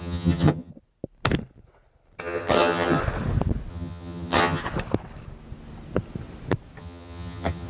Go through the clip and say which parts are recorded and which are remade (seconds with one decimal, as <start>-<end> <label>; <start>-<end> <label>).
0.0-0.7 remade; 0.7-2.2 recorded; 2.2-3.0 remade; 3.0-3.7 recorded; 3.7-4.6 remade; 4.6-6.8 recorded; 6.8-7.7 remade